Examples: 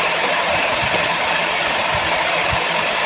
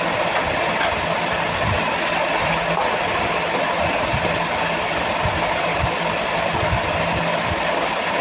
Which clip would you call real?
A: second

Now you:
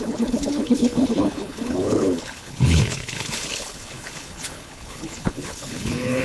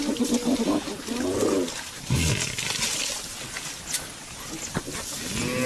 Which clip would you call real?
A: second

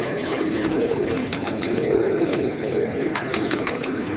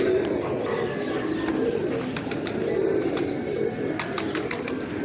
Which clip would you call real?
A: second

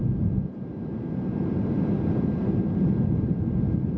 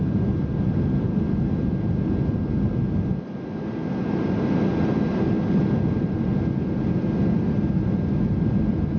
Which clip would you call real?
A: second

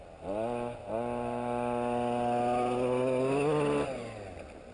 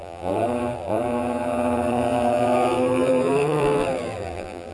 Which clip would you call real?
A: first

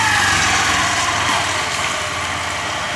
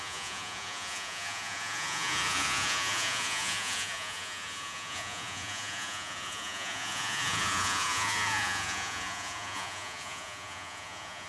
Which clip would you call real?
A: first